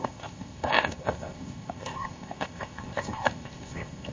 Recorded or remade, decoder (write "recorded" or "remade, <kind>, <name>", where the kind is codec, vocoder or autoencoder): remade, codec, ZipCodec